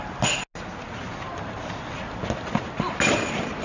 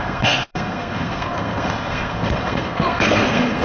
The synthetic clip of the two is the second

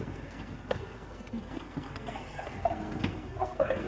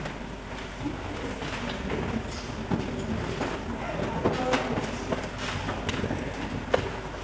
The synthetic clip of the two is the first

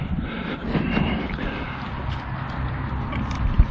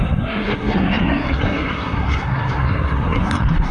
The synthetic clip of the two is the second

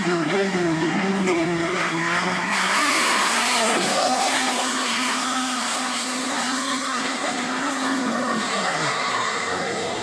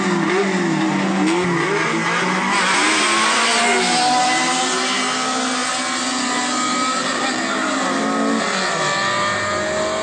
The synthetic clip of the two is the first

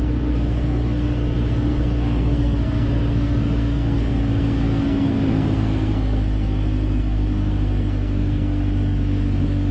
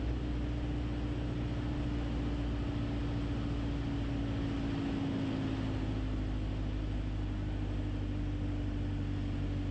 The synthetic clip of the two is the first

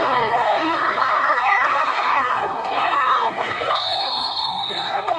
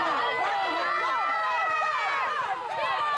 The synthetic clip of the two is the first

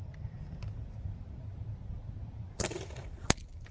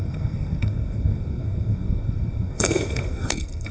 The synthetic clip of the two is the second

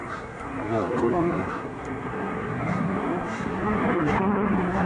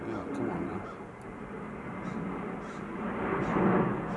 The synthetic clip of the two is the first